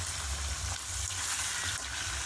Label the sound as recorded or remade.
recorded